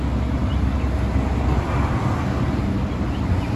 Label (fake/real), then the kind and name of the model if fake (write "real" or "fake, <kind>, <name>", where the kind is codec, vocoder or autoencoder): real